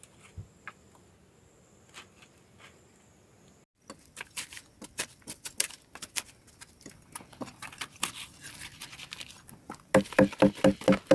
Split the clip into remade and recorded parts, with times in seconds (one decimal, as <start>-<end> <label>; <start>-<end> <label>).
0.0-11.1 recorded